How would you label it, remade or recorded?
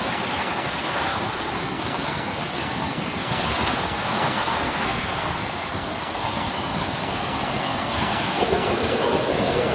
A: remade